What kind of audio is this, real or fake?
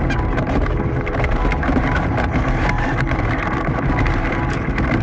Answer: fake